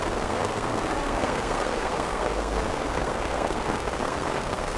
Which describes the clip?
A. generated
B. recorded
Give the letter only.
A